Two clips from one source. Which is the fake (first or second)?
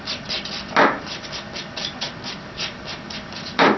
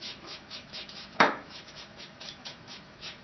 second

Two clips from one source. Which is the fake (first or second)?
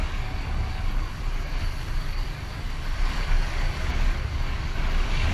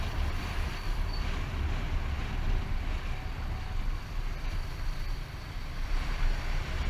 first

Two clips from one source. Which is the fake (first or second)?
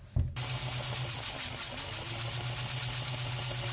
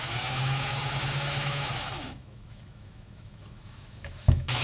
second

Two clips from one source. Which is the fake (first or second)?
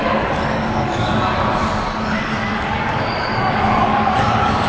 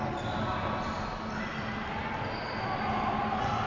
first